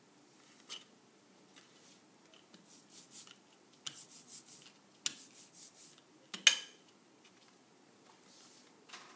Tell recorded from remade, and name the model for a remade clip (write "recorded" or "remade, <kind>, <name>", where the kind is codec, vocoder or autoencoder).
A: recorded